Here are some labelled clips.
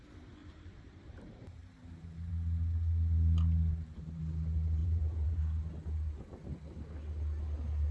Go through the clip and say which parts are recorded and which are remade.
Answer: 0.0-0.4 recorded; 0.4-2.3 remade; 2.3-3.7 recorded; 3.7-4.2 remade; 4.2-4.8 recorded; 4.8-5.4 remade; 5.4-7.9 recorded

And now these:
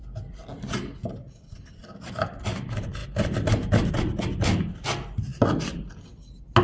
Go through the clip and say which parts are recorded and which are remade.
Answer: 0.0-1.0 recorded; 1.0-1.8 remade; 1.8-6.6 recorded

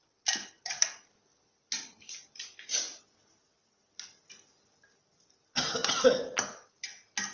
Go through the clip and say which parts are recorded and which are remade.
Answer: 0.0-1.3 recorded; 1.3-3.4 remade; 3.4-5.8 recorded; 5.8-6.4 remade; 6.4-7.3 recorded

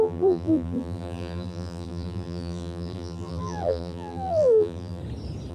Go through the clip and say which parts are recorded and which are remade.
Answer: 0.0-5.0 remade; 5.0-5.5 recorded

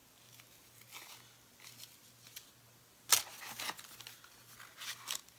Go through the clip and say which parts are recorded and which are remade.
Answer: 0.0-5.4 recorded

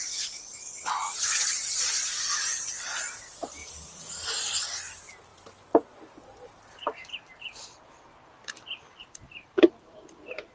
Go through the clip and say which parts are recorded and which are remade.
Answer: 0.0-3.6 remade; 3.6-4.3 recorded; 4.3-5.3 remade; 5.3-6.2 recorded; 6.2-8.2 remade; 8.2-9.0 recorded; 9.0-10.5 remade

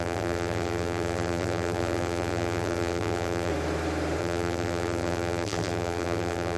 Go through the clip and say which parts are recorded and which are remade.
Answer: 0.0-3.5 remade; 3.5-4.2 recorded; 4.2-6.6 remade

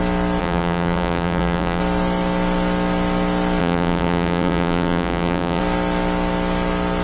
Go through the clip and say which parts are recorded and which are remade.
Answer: 0.0-0.4 recorded; 0.4-1.8 remade; 1.8-3.6 recorded; 3.6-5.6 remade; 5.6-7.0 recorded